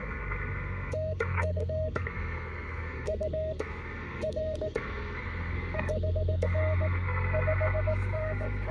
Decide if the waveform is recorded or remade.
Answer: remade